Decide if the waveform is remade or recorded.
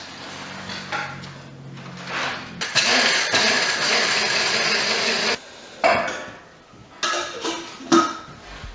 recorded